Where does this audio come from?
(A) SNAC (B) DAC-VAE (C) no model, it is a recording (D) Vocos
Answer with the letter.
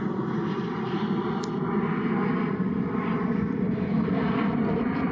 C